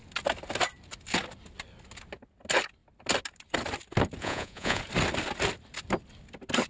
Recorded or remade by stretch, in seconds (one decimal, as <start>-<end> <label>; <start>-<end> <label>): 0.0-4.2 recorded; 4.2-4.8 remade; 4.8-6.7 recorded